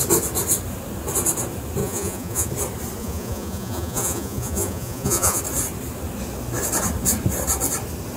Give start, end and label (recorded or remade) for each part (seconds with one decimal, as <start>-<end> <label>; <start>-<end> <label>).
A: 0.0-1.8 recorded; 1.8-2.5 remade; 2.5-3.0 recorded; 3.0-5.4 remade; 5.4-8.2 recorded